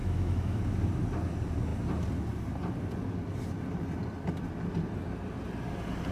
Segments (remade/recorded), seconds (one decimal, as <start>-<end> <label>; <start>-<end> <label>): 0.0-0.6 remade; 0.6-6.1 recorded